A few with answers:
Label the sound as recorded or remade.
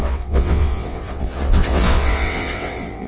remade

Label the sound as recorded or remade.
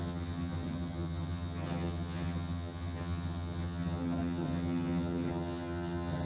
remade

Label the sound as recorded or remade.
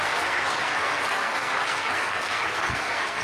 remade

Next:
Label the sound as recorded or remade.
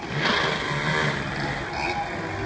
recorded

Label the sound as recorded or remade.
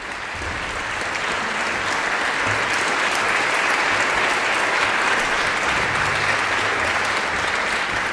recorded